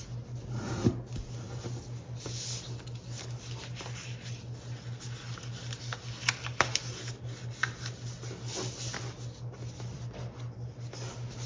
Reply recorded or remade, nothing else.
recorded